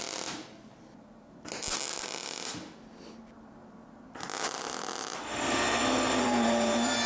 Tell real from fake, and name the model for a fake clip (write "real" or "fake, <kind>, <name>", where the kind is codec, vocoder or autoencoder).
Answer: real